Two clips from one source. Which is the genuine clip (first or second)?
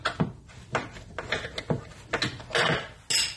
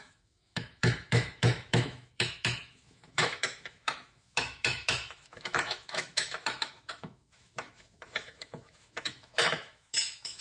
first